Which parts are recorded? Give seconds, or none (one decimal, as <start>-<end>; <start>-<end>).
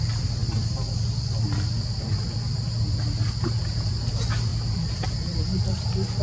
0.0-6.2